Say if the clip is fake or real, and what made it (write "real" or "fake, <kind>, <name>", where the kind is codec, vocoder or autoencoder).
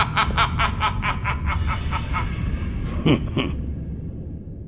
real